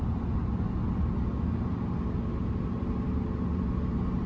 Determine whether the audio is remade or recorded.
recorded